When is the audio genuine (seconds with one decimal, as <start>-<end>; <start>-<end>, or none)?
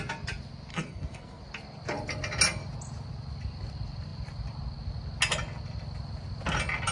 0.0-0.7; 1.4-6.9